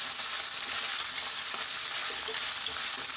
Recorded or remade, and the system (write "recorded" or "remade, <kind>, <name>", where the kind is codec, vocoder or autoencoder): recorded